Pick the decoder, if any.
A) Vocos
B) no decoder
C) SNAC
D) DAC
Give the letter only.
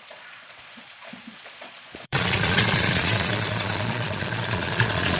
A